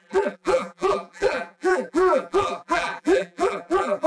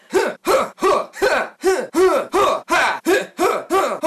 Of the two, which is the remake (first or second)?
first